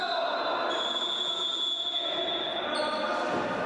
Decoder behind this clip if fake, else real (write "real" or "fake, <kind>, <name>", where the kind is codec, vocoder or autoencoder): real